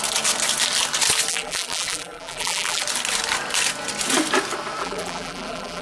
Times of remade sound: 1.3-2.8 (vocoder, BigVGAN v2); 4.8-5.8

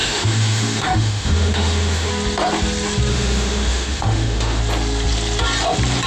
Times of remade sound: 0.0-2.1 (autoencoder, DAC-VAE); 3.1-4.6

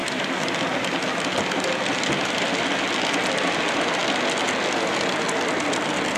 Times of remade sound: none

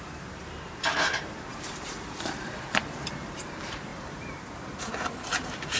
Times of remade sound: 0.0-5.8 (vocoder, BigVGAN v2)